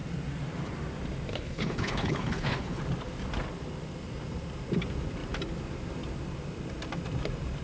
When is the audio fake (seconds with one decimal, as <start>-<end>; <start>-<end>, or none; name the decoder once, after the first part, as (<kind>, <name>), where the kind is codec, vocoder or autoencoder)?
1.3-2.8 (codec, HILCodec)